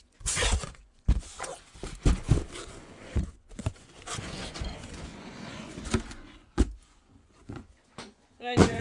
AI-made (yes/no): yes